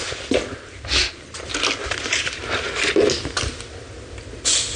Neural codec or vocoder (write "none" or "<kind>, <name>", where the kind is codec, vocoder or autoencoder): none